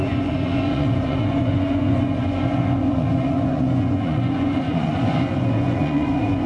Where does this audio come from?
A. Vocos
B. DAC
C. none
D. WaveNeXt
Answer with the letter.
A